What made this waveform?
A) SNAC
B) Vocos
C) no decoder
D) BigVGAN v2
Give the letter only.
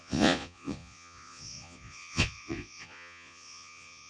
B